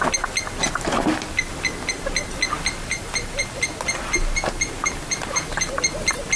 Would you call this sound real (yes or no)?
yes